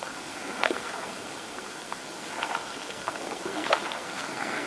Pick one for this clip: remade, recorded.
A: remade